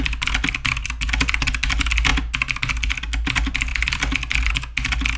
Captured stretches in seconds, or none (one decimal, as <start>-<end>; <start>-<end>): 0.0-5.2